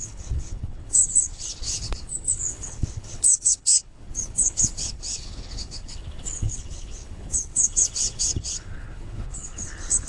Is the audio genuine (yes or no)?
no